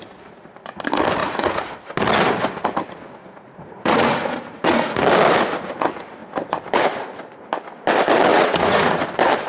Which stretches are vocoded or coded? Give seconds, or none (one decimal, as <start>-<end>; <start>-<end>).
1.2-1.7; 3.2-5.0; 8.3-9.0